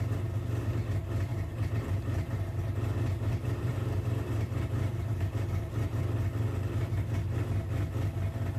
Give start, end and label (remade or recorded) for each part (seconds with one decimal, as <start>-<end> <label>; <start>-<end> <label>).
0.0-1.3 recorded; 1.3-6.0 remade; 6.0-8.6 recorded